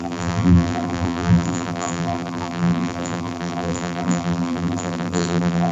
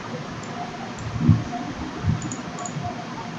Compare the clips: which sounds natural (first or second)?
second